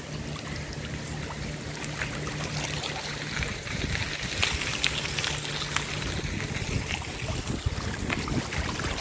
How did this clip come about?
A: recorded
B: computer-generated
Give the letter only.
A